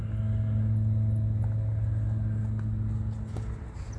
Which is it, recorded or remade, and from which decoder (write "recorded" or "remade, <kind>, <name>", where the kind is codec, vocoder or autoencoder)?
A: recorded